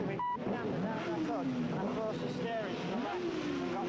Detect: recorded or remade recorded